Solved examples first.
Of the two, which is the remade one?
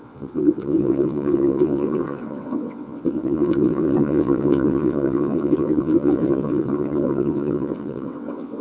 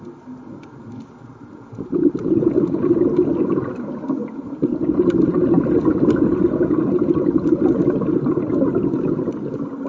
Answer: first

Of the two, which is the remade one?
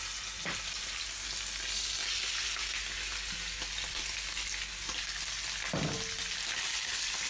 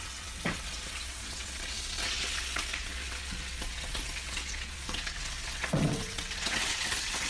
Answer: second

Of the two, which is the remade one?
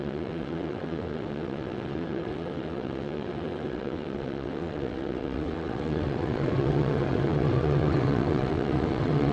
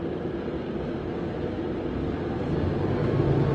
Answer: first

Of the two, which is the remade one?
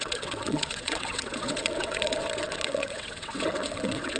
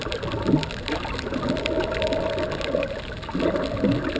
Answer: first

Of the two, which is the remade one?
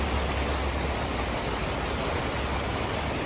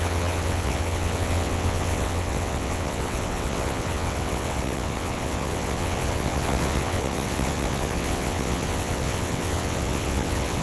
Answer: second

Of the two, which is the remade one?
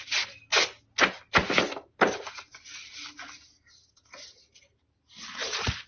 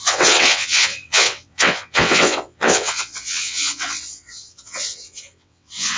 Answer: second